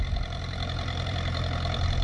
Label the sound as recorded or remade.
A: remade